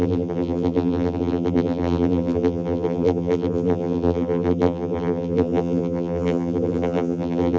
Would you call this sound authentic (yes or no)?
no